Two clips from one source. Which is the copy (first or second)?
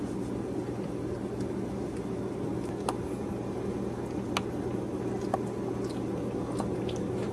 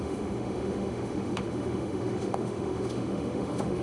second